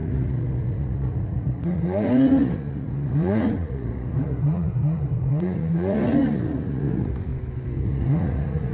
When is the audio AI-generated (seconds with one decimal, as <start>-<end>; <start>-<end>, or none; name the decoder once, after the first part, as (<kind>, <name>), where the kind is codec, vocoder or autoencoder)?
0.0-7.3 (vocoder, Vocos); 7.8-8.7